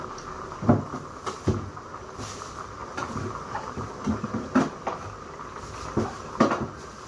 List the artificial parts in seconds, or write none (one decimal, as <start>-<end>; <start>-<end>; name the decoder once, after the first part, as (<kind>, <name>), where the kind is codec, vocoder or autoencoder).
none